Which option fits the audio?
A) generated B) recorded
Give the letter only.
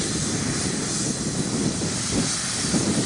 B